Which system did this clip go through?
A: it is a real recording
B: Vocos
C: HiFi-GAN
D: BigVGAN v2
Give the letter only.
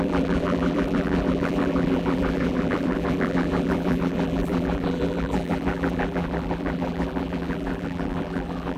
D